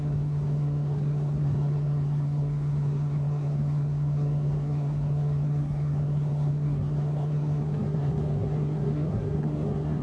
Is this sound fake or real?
fake